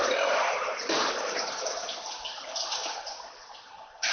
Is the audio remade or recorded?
remade